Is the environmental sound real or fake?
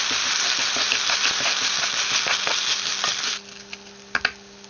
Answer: real